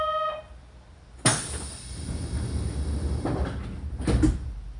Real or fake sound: real